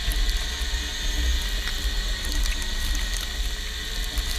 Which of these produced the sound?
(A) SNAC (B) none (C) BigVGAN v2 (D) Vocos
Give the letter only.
B